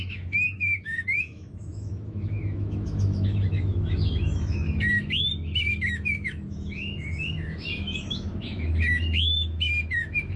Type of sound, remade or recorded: remade